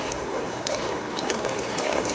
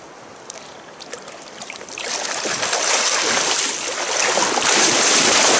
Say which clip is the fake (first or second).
first